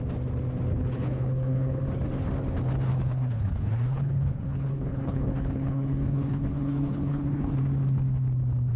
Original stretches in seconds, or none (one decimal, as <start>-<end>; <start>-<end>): 0.0-0.7; 1.8-2.9; 7.5-8.8